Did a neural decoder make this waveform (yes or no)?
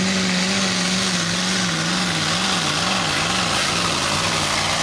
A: no